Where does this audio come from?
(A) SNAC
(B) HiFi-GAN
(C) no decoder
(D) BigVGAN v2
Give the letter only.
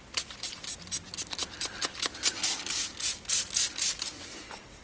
C